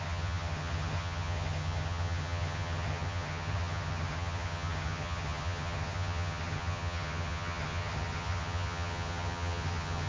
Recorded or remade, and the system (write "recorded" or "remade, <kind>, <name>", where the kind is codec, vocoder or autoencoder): remade, vocoder, HiFi-GAN